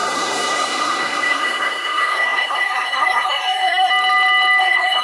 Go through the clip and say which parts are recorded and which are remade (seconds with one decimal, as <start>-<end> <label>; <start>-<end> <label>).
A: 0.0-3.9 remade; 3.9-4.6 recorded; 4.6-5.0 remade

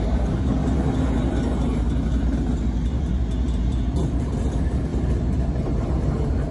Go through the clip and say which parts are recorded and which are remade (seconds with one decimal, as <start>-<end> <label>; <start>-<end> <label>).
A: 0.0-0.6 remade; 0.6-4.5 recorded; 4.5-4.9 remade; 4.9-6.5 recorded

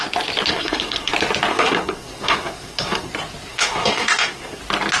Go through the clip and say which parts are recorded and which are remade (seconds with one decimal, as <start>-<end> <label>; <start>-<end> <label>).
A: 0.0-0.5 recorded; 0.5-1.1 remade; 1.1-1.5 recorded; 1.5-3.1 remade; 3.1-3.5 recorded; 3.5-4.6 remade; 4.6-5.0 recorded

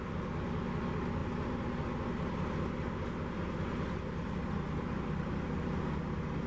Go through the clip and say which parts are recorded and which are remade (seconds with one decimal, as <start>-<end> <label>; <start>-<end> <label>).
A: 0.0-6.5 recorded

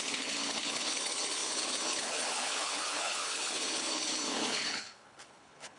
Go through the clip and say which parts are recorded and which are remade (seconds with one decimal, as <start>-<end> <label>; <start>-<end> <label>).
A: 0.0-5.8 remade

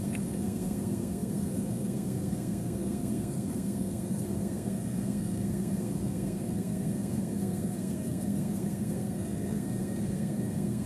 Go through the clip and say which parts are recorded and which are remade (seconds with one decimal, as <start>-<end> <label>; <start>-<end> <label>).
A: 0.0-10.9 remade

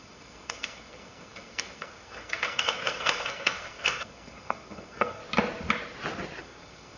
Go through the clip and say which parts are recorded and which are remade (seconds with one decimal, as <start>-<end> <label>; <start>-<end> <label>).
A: 0.0-5.2 remade; 5.2-6.4 recorded; 6.4-7.0 remade

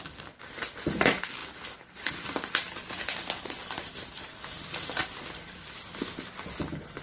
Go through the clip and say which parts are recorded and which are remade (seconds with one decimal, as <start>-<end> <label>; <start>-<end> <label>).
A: 0.0-7.0 recorded